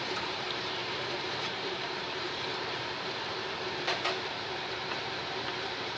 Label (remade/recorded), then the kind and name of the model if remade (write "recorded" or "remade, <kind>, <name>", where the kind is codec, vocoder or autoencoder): remade, vocoder, BigVGAN v2